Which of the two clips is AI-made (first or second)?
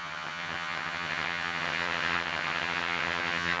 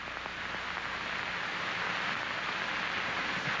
first